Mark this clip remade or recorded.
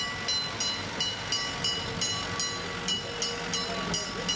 recorded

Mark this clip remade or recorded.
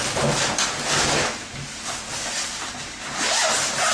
recorded